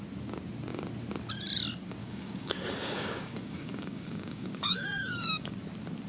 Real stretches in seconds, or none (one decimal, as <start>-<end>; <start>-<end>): 0.0-2.0; 5.5-6.1